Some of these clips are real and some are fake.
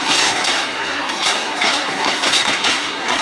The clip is fake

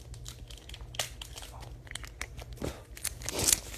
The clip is real